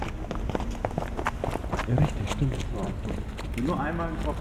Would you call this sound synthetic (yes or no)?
no